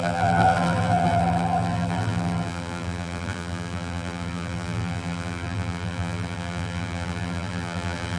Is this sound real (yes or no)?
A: no